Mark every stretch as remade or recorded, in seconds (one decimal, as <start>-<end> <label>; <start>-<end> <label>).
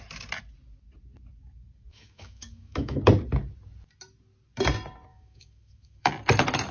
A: 0.0-1.9 recorded; 1.9-3.0 remade; 3.0-5.1 recorded; 5.1-6.1 remade; 6.1-6.7 recorded